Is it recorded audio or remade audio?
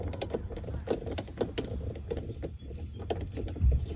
recorded